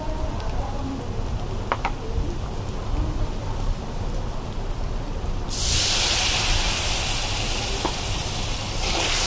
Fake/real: real